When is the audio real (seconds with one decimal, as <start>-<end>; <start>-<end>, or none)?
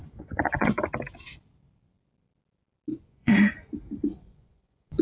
0.8-2.9; 3.5-4.1